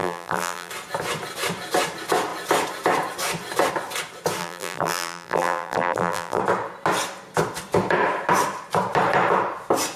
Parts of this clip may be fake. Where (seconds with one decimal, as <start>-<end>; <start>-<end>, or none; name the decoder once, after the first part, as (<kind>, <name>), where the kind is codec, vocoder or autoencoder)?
0.0-0.7 (vocoder, BigVGAN v2); 4.4-6.4